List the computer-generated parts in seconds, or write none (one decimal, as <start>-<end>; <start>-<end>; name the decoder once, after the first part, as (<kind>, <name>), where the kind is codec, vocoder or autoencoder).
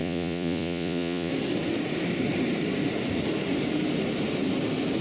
0.0-1.3 (vocoder, Vocos)